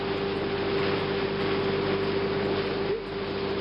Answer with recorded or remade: recorded